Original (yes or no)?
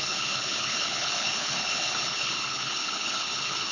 no